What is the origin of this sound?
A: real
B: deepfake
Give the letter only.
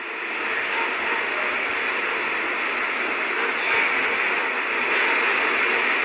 A